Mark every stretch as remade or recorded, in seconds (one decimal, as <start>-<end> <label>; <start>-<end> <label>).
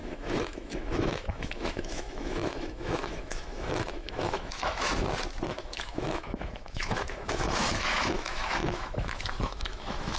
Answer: 0.0-4.9 remade; 4.9-5.5 recorded; 5.5-10.2 remade